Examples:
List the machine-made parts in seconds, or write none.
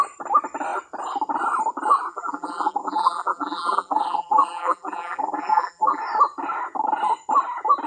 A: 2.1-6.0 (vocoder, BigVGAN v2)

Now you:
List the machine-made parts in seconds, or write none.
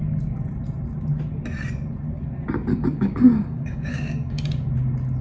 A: 2.7-4.4 (codec, DAC)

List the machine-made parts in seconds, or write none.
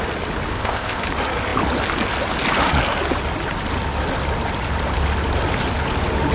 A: 0.5-1.0 (codec, ZipCodec)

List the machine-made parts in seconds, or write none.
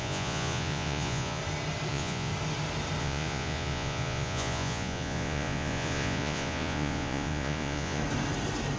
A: 0.0-1.4 (vocoder, Vocos); 1.9-2.3; 3.0-8.0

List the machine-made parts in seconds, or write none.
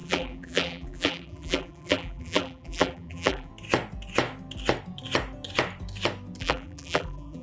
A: 0.0-3.5 (vocoder, BigVGAN v2); 6.4-7.4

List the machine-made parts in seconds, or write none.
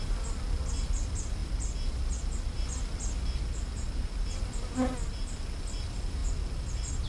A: none